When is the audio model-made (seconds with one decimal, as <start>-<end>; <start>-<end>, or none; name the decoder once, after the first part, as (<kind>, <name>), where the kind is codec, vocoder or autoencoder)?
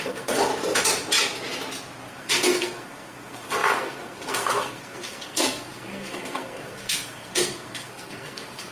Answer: 0.0-0.5 (codec, SNAC); 2.1-8.7